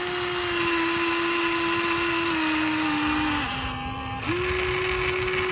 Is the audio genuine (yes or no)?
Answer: yes